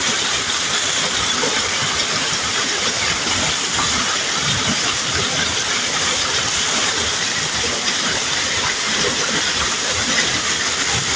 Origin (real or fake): fake